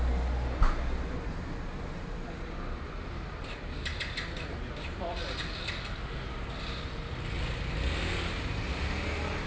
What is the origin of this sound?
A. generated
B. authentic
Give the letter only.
B